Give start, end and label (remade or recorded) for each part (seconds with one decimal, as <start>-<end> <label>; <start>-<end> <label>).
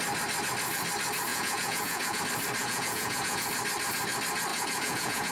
0.0-1.3 recorded; 1.3-2.2 remade; 2.2-2.6 recorded; 2.6-3.5 remade; 3.5-4.5 recorded; 4.5-5.3 remade